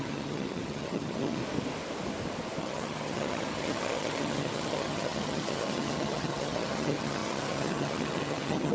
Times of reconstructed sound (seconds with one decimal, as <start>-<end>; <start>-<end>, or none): 0.0-1.4; 2.6-8.7